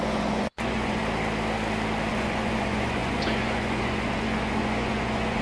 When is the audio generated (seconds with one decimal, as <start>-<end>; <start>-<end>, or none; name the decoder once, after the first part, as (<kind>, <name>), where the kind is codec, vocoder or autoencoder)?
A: 0.0-1.0 (vocoder, Vocos); 2.1-5.4